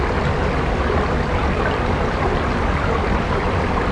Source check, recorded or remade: recorded